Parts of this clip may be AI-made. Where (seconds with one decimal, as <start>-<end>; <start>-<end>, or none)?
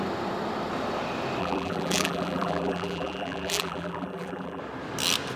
1.4-4.6